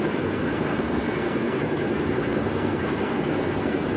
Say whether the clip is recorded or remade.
remade